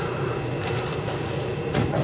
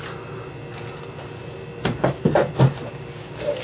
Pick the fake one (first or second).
first